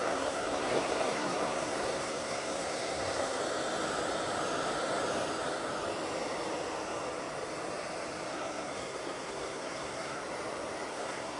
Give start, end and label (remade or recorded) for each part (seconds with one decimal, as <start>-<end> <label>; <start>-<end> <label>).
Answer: 0.0-3.4 remade; 3.4-8.3 recorded; 8.3-10.2 remade; 10.2-10.9 recorded; 10.9-11.4 remade